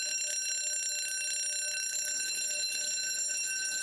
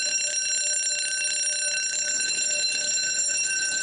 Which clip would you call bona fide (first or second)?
first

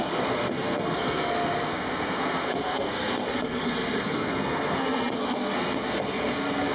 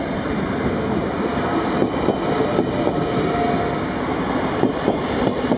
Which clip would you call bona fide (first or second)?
second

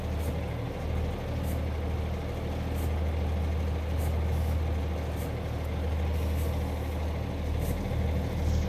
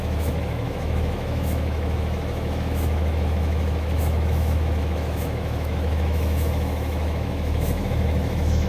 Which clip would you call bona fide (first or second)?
first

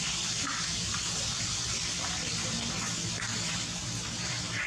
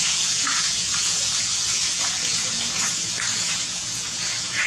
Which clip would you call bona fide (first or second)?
first